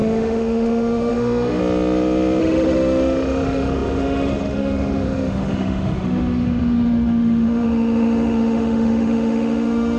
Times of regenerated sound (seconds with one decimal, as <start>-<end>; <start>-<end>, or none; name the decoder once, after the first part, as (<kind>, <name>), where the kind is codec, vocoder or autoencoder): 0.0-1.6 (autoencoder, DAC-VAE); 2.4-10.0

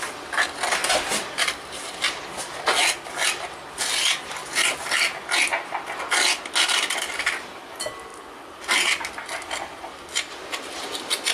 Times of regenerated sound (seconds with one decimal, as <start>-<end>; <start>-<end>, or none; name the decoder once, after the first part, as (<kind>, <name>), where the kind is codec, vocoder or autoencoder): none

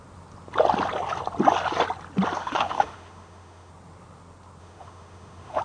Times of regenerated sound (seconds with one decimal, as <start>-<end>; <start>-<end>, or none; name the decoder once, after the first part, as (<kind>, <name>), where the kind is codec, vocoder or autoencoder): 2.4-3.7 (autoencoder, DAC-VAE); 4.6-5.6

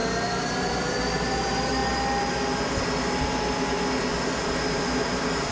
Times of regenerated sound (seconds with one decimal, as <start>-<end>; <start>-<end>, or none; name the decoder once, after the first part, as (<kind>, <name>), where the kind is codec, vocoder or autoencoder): none

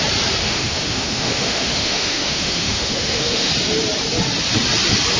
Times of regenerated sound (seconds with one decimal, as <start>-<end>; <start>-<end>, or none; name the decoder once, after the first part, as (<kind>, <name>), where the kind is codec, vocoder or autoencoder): 0.4-3.5 (autoencoder, DAC-VAE)

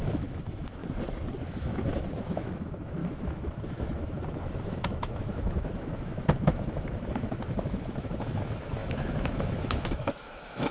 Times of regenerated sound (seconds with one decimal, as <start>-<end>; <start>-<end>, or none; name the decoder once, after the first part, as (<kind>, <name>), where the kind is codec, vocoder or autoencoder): 0.0-0.8 (autoencoder, DAC-VAE); 1.4-10.7

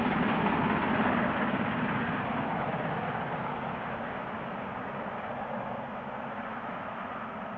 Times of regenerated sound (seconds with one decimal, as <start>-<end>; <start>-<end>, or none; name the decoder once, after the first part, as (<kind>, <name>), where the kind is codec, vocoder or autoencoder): 6.5-7.1 (autoencoder, DAC-VAE)